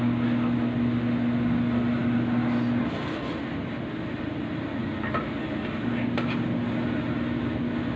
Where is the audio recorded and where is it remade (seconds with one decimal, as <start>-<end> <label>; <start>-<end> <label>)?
0.0-8.0 recorded